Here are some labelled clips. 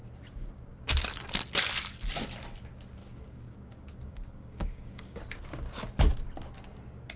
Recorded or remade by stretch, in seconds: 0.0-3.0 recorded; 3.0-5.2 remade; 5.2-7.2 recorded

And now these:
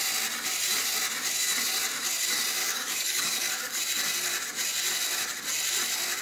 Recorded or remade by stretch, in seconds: 0.0-2.6 recorded; 2.6-3.8 remade; 3.8-6.2 recorded